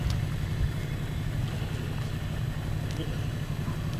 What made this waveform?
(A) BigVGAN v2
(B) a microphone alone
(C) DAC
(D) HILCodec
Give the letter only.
B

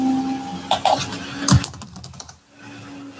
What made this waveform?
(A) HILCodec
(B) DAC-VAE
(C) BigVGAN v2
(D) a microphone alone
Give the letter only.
D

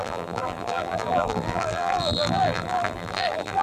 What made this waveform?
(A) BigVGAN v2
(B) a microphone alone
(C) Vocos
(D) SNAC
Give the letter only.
A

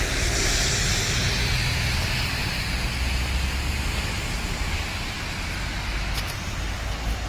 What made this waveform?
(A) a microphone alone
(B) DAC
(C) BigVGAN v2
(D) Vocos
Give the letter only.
A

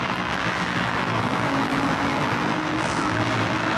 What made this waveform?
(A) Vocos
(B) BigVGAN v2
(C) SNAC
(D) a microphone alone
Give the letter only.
B